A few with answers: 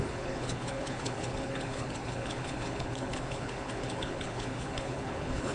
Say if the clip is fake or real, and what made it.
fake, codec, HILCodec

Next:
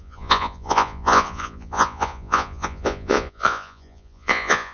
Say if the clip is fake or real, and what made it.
fake, vocoder, Vocos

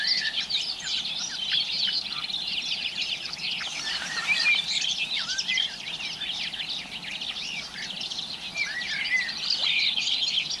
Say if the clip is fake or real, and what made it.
real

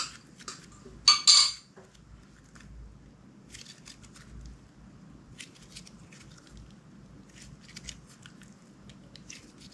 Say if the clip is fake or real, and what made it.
real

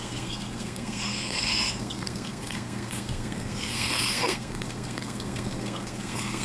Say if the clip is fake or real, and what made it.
fake, codec, SNAC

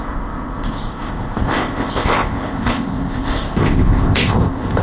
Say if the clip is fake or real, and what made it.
fake, codec, ZipCodec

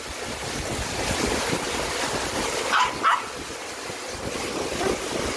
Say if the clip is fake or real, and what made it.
real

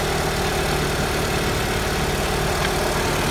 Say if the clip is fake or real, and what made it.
real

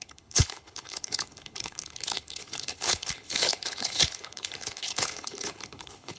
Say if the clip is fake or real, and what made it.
fake, codec, HILCodec